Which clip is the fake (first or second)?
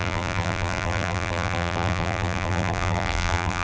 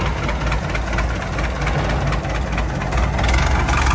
first